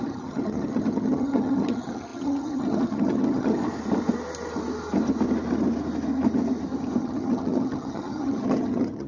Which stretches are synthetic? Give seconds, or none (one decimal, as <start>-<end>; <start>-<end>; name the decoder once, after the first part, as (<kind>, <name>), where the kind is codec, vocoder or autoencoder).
0.0-3.6 (vocoder, HiFi-GAN); 7.0-9.1